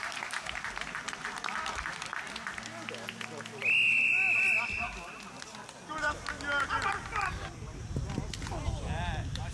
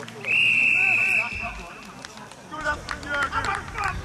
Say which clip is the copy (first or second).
second